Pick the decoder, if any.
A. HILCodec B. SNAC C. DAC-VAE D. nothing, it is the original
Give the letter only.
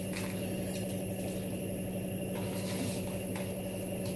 D